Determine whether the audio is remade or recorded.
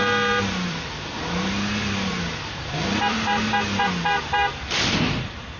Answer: remade